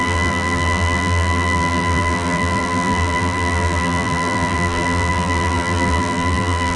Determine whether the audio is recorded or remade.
remade